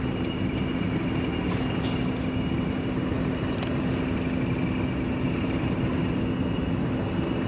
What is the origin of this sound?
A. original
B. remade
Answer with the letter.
A